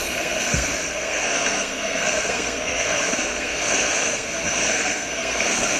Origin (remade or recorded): remade